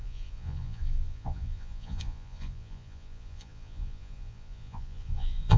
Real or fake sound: fake